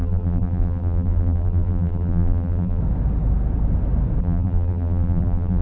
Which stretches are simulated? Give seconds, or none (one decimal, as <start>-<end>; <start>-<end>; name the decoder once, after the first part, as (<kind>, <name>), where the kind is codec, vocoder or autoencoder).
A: 0.0-2.8 (vocoder, BigVGAN v2); 4.2-5.6

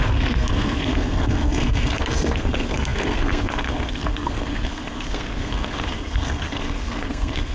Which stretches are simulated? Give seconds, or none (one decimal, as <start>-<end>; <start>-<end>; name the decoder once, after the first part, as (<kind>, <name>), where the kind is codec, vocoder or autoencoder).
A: 0.0-7.5 (codec, SNAC)

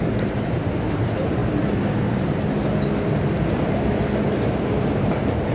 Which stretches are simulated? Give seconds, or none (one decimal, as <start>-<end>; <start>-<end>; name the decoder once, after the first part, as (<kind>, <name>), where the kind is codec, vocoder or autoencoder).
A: 0.0-1.4 (vocoder, BigVGAN v2); 4.2-5.5

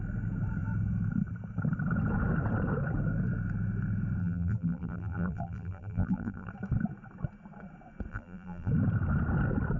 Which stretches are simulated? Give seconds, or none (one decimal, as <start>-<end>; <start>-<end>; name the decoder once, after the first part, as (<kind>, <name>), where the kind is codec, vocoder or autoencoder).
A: 4.2-6.5 (vocoder, BigVGAN v2); 8.1-8.7

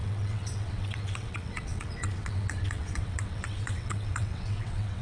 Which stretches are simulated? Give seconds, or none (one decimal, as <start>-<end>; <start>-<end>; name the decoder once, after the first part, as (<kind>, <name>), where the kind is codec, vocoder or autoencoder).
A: 0.0-5.0 (vocoder, WaveNeXt)